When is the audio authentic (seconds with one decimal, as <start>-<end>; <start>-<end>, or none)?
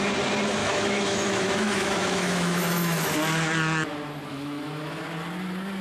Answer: 0.0-0.6; 3.1-4.3; 5.0-5.8